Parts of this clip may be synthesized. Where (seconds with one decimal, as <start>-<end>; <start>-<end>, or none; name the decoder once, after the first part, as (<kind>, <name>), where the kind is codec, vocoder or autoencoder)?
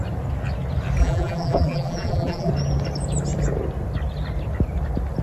1.0-2.5 (vocoder, BigVGAN v2)